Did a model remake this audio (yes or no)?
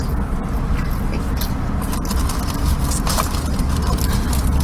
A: no